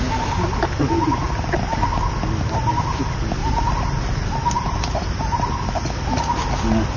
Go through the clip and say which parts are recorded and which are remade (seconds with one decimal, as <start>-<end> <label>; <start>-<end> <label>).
0.0-3.4 recorded; 3.4-6.2 remade; 6.2-7.0 recorded